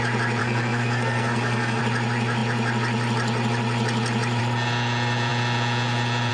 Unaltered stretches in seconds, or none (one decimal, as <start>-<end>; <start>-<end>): 0.0-0.4; 1.8-6.3